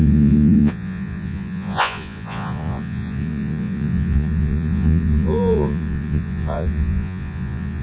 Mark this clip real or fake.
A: fake